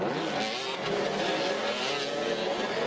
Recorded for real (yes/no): yes